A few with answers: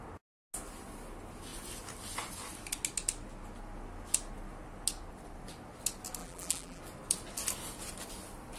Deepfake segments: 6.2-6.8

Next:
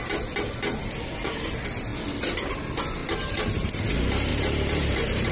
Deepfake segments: 3.0-3.7; 4.3-5.3

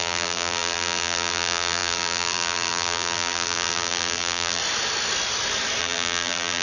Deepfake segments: 0.0-4.6; 5.8-6.6

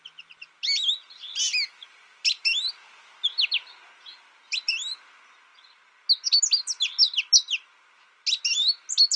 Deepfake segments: none

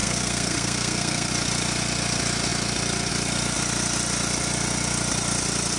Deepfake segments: 0.0-1.3

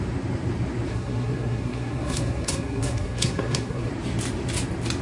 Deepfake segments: 0.9-3.9